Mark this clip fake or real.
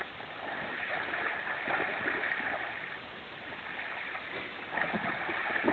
real